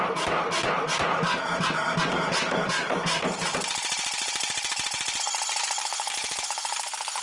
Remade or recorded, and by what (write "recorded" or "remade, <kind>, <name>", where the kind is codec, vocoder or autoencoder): remade, vocoder, BigVGAN v2